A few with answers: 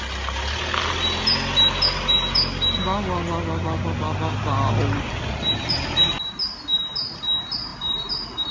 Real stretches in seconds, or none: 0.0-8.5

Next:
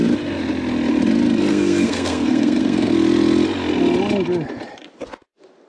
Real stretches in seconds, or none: 0.0-1.5; 2.9-5.7